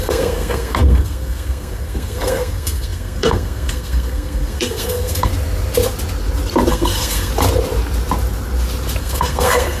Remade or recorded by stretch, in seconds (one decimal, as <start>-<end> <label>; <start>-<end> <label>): 0.0-5.3 remade; 5.3-6.7 recorded; 6.7-7.3 remade; 7.3-9.0 recorded; 9.0-9.8 remade